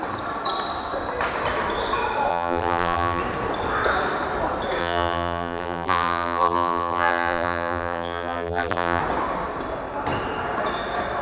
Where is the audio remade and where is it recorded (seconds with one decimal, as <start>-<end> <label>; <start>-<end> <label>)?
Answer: 0.0-2.3 recorded; 2.3-3.2 remade; 3.2-4.8 recorded; 4.8-9.0 remade; 9.0-11.2 recorded